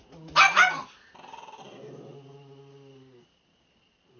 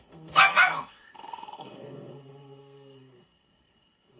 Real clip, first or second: first